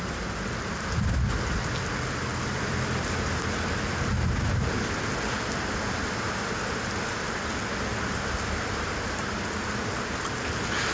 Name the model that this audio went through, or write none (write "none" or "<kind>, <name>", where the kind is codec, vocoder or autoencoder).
none